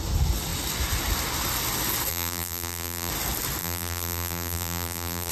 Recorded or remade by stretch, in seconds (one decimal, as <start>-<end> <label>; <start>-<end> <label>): 0.0-2.1 recorded; 2.1-3.1 remade; 3.1-3.6 recorded; 3.6-5.3 remade

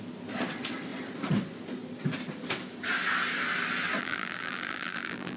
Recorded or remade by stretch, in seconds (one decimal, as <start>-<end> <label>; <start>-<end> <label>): 0.0-4.0 recorded; 4.0-5.4 remade

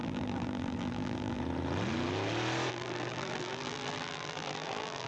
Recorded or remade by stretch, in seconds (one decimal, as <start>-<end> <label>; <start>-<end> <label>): 0.0-1.4 remade; 1.4-2.7 recorded; 2.7-5.1 remade

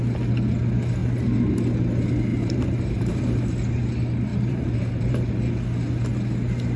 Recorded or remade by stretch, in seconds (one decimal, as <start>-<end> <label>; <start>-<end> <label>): 0.0-1.0 recorded; 1.0-1.9 remade; 1.9-2.3 recorded; 2.3-3.1 remade; 3.1-4.3 recorded; 4.3-5.4 remade; 5.4-6.8 recorded